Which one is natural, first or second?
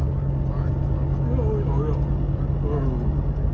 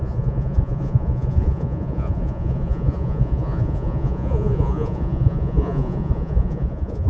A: first